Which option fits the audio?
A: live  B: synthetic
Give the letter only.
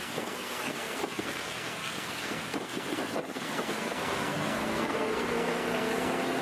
B